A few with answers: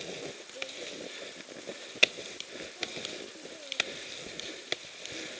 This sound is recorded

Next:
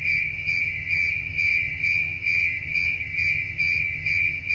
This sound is remade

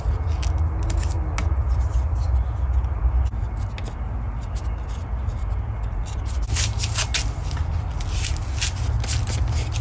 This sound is recorded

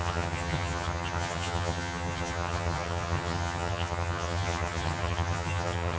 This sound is remade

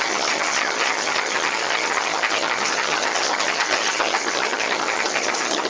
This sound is remade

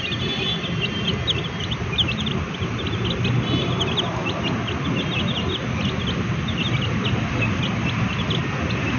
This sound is recorded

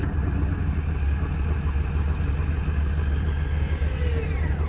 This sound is recorded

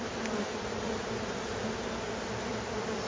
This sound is recorded